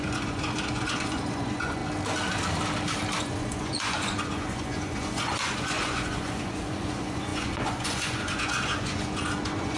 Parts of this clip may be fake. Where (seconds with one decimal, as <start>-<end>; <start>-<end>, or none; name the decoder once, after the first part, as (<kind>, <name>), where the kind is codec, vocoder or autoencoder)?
0.0-1.8 (vocoder, Vocos); 3.2-9.8